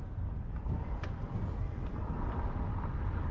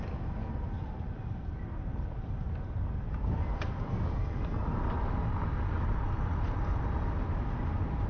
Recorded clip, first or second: second